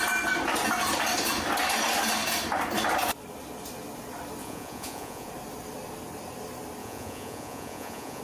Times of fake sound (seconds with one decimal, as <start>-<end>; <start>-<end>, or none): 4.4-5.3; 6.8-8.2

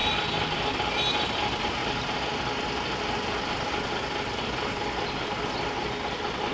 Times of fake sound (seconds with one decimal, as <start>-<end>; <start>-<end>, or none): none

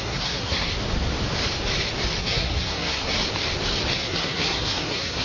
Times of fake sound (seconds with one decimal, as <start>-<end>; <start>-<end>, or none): 0.0-0.7; 2.2-3.2; 4.0-5.2